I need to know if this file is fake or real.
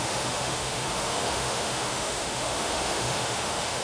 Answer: fake